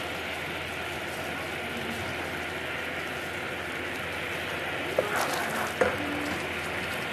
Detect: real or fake real